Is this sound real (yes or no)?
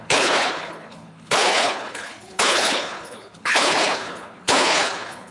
no